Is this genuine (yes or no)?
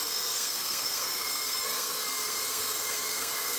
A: no